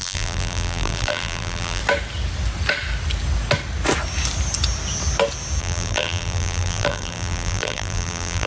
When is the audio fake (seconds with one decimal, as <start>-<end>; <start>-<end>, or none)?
0.0-1.8; 5.6-8.5